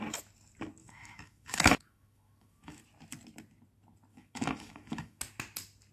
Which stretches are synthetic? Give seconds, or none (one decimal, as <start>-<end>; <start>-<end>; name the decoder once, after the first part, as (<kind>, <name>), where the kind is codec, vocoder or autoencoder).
0.8-2.8 (autoencoder, DAC-VAE); 4.1-5.2